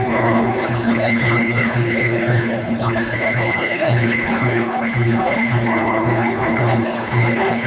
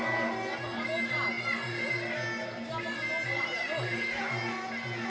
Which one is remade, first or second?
first